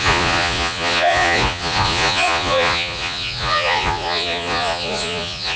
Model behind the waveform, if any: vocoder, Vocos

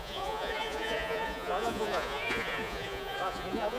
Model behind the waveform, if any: vocoder, Vocos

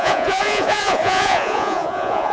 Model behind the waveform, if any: vocoder, Vocos